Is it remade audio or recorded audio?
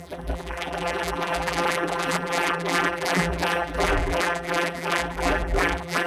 remade